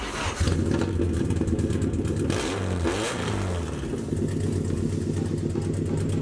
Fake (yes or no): no